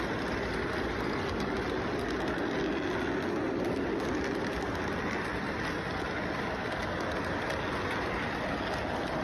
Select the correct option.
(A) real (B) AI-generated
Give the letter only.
A